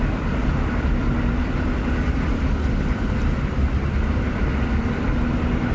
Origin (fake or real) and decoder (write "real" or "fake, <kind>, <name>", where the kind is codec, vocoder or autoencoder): real